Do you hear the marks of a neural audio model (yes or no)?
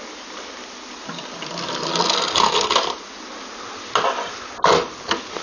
no